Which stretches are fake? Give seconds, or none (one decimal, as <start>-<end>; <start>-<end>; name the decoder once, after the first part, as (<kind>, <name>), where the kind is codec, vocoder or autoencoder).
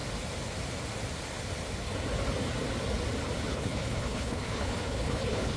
3.5-5.6 (codec, HILCodec)